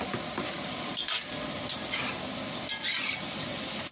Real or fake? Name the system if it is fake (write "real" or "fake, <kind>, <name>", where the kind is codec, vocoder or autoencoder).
real